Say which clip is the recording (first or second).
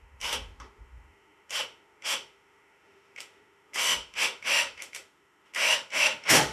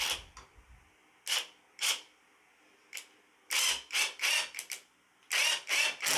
second